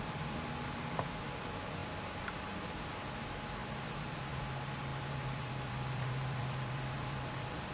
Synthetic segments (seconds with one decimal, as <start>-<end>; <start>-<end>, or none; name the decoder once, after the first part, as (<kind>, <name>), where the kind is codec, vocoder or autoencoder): 0.0-7.7 (vocoder, BigVGAN v2)